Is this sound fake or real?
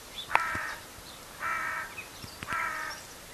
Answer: fake